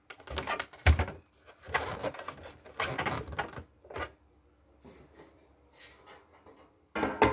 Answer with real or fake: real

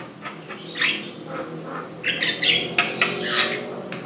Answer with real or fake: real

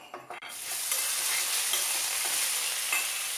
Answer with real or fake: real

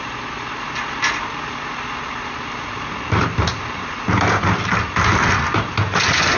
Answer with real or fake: real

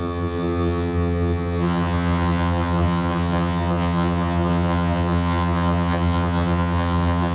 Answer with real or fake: fake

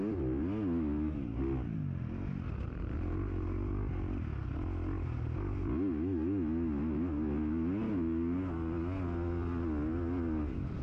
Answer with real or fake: real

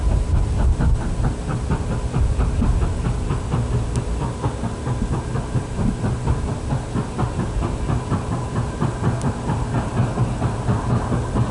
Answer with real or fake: real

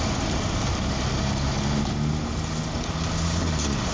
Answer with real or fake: real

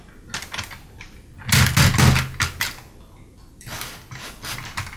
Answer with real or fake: real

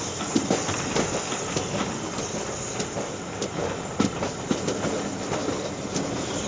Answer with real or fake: real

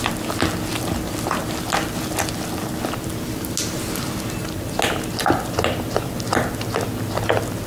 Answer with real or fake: real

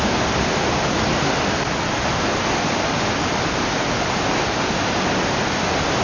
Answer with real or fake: real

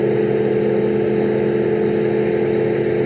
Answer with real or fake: real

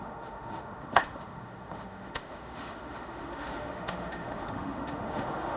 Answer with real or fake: fake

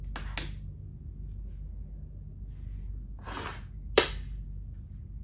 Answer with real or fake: real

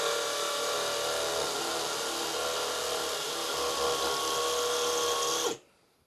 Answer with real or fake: real